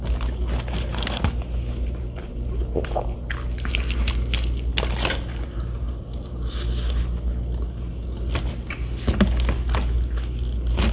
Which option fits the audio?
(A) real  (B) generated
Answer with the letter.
A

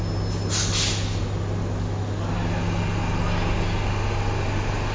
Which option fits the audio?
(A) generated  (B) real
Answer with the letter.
B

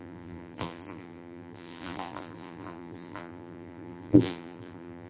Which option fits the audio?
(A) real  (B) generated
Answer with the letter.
B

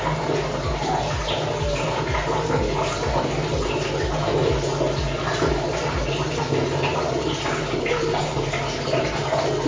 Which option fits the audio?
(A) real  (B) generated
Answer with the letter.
A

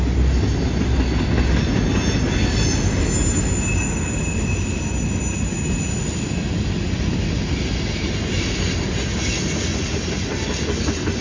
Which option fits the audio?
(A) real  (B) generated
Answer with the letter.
A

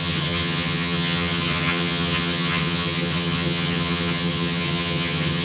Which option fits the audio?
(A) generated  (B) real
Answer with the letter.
A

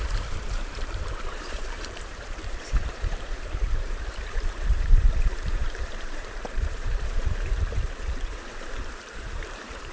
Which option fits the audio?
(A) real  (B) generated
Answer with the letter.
B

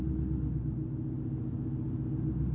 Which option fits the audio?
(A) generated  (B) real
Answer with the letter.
B